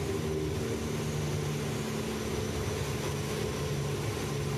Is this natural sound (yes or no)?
yes